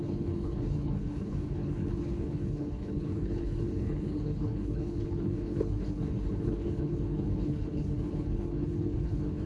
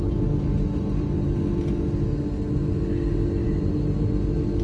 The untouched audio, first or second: second